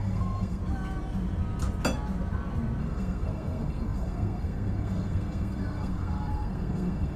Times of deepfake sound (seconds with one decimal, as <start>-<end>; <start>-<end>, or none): 0.0-0.6; 2.8-7.2

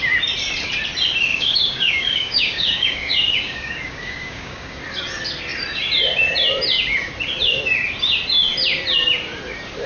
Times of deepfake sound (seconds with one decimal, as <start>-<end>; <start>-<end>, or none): 1.3-4.8

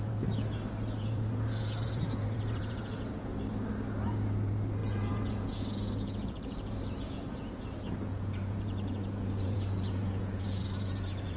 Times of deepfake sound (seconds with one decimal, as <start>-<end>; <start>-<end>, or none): 0.0-3.3; 4.0-11.4

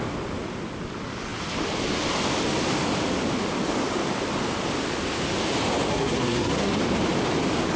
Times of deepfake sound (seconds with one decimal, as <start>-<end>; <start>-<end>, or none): 5.9-6.7

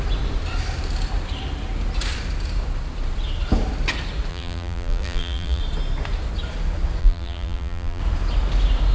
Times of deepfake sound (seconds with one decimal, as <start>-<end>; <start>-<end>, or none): 4.3-5.6; 7.0-8.0

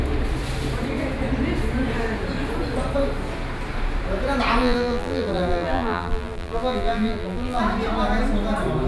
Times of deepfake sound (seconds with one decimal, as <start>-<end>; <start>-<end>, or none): 4.6-7.6